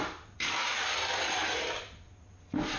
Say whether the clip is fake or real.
real